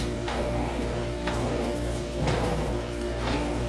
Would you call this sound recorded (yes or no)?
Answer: no